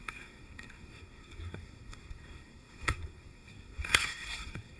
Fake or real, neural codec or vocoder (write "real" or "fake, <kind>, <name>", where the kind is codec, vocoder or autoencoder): fake, codec, SNAC